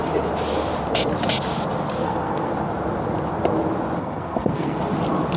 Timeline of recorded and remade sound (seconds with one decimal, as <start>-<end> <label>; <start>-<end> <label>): 0.0-2.0 recorded; 2.0-2.5 remade; 2.5-4.0 recorded; 4.0-4.8 remade; 4.8-5.4 recorded